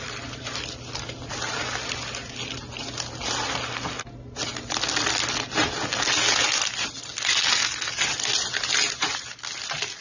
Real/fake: real